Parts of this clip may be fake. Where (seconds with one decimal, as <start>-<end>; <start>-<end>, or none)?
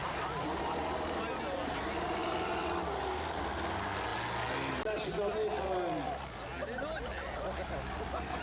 2.2-2.8